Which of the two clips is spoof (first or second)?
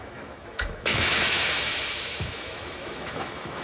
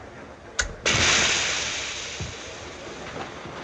first